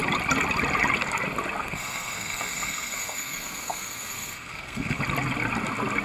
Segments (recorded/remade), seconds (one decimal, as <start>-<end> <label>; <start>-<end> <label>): 0.0-1.6 recorded; 1.6-5.0 remade; 5.0-6.0 recorded

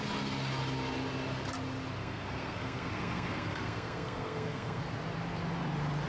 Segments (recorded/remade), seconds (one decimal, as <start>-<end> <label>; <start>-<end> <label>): 0.0-2.0 recorded; 2.0-4.8 remade; 4.8-6.1 recorded

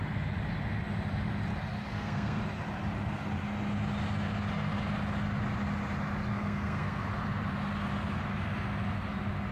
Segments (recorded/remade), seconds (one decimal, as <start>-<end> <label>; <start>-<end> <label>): 0.0-1.9 recorded; 1.9-2.4 remade; 2.4-6.3 recorded; 6.3-7.0 remade; 7.0-9.5 recorded

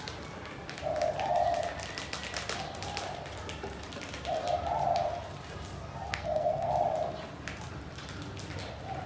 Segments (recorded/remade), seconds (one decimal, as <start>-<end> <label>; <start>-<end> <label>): 0.0-6.1 recorded; 6.1-6.7 remade; 6.7-9.1 recorded

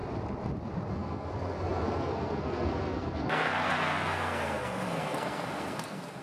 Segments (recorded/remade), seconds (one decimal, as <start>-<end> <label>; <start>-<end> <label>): 0.0-0.9 recorded; 0.9-6.2 remade

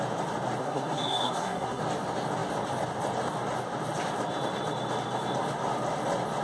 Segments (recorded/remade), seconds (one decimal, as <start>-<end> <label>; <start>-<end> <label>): 0.0-0.6 recorded; 0.6-1.8 remade; 1.8-6.4 recorded

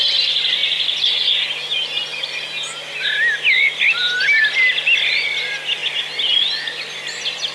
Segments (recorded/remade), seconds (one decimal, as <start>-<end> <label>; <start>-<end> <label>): 0.0-7.5 recorded

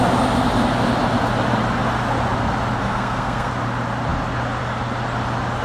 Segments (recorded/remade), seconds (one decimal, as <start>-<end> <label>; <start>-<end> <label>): 0.0-2.8 recorded; 2.8-3.5 remade; 3.5-5.6 recorded